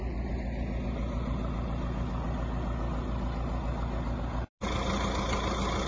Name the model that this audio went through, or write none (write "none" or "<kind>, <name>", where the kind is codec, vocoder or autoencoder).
none